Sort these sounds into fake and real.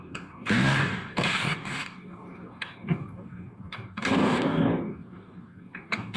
fake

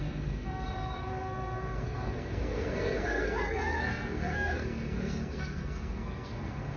fake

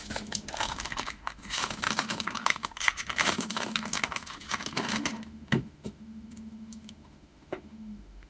fake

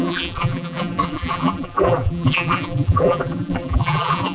fake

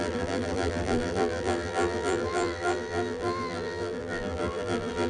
fake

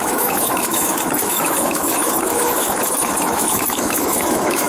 fake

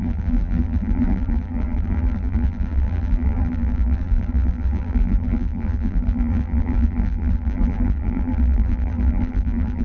fake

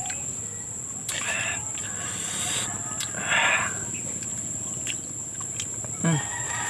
real